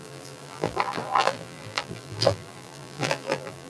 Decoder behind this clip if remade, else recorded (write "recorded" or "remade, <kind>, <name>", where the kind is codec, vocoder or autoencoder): remade, vocoder, BigVGAN v2